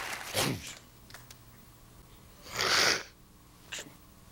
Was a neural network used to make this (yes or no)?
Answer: no